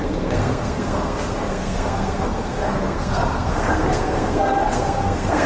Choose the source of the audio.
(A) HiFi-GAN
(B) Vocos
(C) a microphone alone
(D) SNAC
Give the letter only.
D